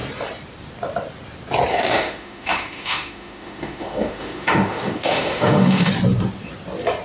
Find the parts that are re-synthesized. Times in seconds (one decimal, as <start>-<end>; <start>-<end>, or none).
1.7-5.9